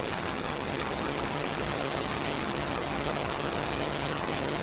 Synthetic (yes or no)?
yes